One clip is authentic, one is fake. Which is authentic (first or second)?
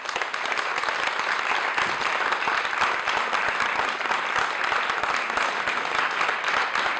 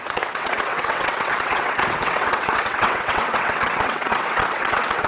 first